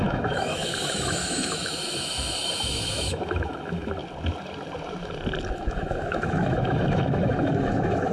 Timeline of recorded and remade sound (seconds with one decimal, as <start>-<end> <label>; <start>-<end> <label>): 0.0-4.0 remade; 4.0-5.5 recorded; 5.5-8.1 remade